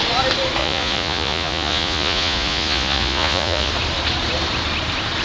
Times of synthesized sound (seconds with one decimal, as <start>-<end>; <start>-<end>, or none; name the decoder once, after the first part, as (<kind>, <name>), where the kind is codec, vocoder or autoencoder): 0.6-3.7 (vocoder, Vocos)